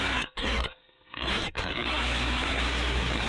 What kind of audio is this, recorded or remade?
remade